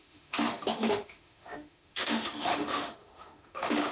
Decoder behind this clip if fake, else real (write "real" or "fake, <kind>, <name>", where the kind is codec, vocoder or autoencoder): fake, autoencoder, DAC-VAE